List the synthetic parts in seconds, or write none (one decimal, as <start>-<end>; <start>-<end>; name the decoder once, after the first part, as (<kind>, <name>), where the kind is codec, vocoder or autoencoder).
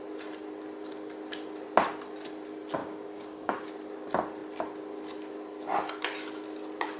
2.8-3.7 (codec, DAC)